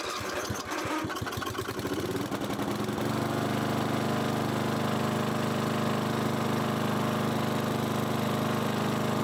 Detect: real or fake real